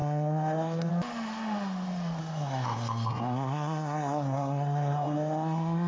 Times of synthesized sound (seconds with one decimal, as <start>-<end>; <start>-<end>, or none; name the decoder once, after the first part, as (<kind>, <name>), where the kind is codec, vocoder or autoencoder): 0.0-0.9 (codec, SNAC); 2.2-5.9